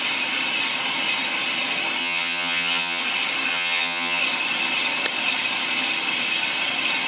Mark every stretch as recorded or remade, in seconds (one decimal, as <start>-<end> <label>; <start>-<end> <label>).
0.0-2.0 recorded; 2.0-3.0 remade; 3.0-3.5 recorded; 3.5-4.2 remade; 4.2-7.1 recorded